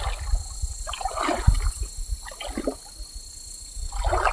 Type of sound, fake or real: real